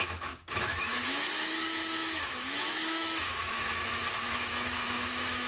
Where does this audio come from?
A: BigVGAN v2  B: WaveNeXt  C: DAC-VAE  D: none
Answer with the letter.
C